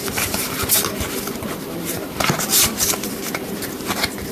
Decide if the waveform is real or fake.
fake